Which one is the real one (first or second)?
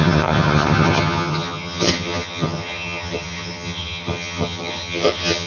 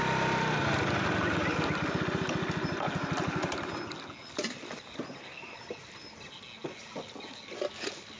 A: second